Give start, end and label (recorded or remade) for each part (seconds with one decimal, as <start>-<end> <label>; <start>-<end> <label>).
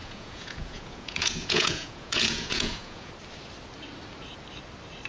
0.0-3.1 remade; 3.1-5.1 recorded